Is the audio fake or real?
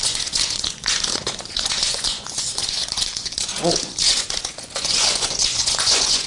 fake